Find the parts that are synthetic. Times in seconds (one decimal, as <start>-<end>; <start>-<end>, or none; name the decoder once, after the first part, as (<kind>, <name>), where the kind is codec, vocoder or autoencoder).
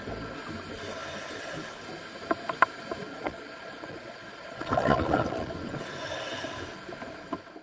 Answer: 3.1-5.5 (vocoder, Vocos)